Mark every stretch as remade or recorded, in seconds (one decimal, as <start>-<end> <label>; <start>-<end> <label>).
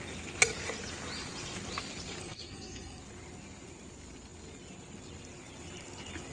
0.0-2.2 recorded; 2.2-3.0 remade; 3.0-6.3 recorded